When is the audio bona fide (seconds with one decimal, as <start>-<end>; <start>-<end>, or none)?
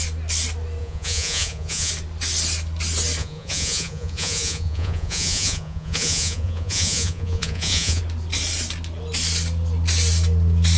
0.0-0.8; 1.9-3.2; 8.0-10.8